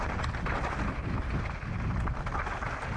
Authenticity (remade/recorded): recorded